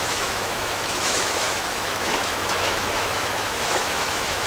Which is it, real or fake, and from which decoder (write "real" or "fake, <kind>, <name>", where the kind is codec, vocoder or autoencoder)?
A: fake, autoencoder, DAC-VAE